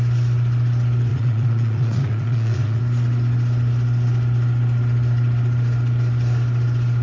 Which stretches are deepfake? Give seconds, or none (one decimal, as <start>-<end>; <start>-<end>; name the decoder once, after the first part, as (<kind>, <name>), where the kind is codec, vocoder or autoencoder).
1.1-2.8 (vocoder, Vocos)